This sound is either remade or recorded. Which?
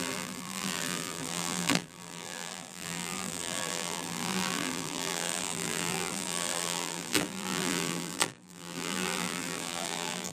remade